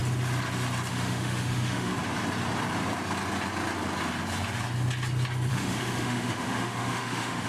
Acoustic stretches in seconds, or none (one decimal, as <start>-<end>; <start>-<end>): 0.0-0.9; 1.9-5.5